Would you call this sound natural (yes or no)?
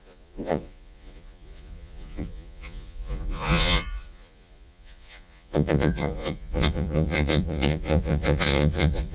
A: no